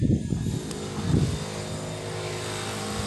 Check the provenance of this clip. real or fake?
real